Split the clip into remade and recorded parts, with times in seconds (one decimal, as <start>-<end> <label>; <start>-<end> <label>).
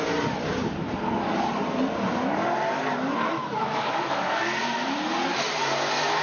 0.0-3.3 recorded; 3.3-4.4 remade; 4.4-6.2 recorded